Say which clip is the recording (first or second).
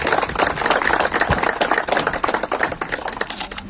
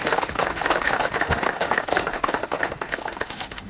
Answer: first